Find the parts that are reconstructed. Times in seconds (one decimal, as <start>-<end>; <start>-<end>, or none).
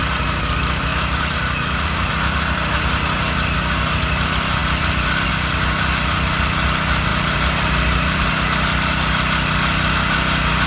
0.9-2.1; 7.1-8.3